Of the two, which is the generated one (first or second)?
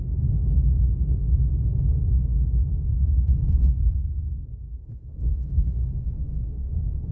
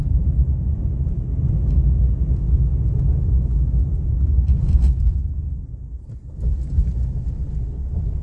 first